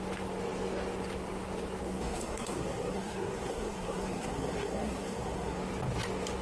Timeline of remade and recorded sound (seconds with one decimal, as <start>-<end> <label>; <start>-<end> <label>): 0.0-1.8 recorded; 1.8-5.6 remade; 5.6-6.4 recorded